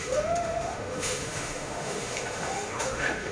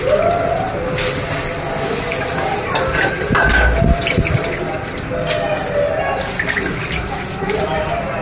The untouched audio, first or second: second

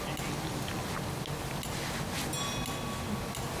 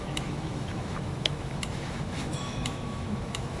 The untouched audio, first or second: first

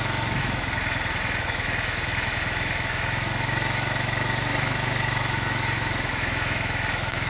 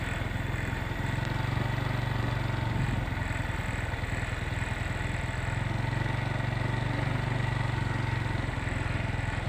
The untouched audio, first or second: second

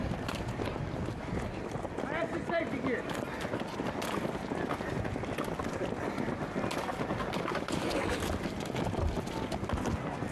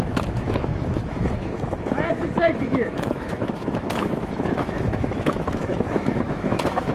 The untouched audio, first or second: first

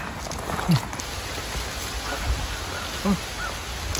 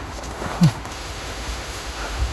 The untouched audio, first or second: first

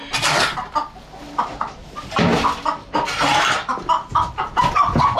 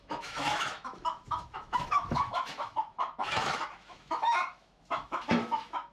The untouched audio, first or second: first